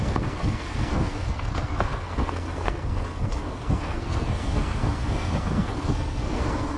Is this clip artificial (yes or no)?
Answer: yes